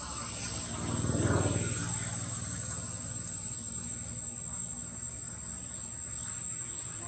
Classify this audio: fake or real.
real